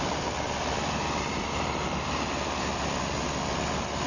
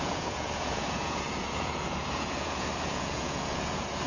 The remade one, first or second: second